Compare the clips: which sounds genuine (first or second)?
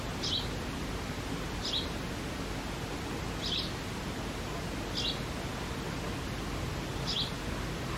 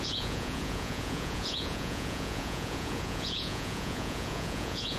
first